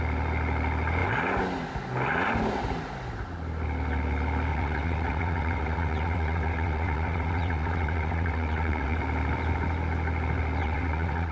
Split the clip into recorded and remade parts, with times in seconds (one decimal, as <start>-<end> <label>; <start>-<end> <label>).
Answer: 0.0-4.5 recorded; 4.5-9.0 remade; 9.0-10.6 recorded; 10.6-11.3 remade